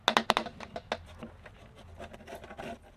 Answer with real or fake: real